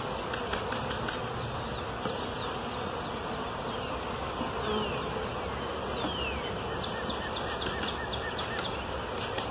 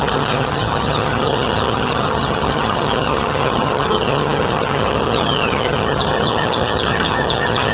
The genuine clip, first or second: first